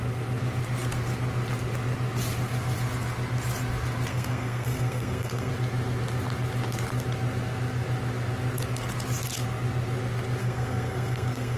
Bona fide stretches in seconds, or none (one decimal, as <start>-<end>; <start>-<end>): 0.0-4.1; 5.5-10.4